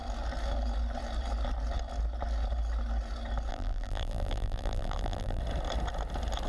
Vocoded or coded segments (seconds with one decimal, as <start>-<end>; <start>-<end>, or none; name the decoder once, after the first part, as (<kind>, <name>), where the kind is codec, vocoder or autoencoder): 3.5-5.4 (vocoder, BigVGAN v2)